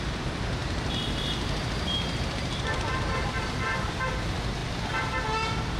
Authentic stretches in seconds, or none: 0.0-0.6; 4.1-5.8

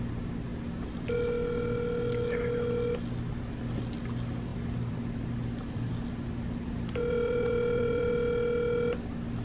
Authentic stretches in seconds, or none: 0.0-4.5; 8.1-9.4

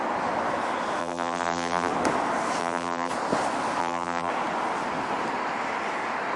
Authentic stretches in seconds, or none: 0.0-1.0; 1.9-2.6; 3.1-3.8; 4.3-6.4

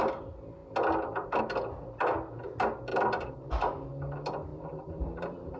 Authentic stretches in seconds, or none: 0.0-2.9; 3.9-4.5

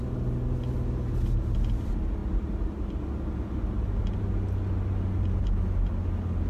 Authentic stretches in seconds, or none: 0.0-2.2; 3.0-6.5

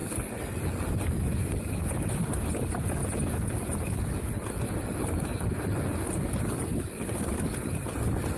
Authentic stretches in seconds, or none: 0.0-1.1; 1.8-2.4; 3.0-4.6

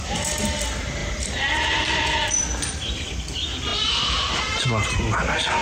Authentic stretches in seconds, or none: 0.0-1.0; 2.4-3.7; 4.4-5.6